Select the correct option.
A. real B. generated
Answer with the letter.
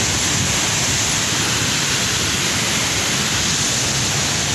A